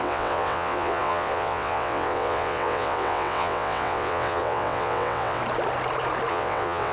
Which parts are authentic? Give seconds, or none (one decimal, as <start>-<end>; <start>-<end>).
5.4-6.3